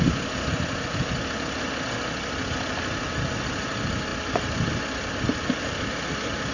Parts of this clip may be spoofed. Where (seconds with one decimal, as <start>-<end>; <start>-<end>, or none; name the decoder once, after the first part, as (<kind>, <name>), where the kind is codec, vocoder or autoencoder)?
none